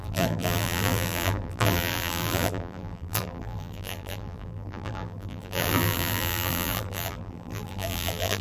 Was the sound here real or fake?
fake